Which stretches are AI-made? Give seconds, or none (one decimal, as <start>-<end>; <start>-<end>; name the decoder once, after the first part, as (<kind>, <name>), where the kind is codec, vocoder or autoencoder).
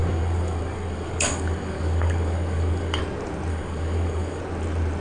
0.0-3.0 (codec, DAC); 3.5-4.4